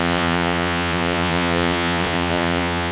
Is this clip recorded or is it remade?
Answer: remade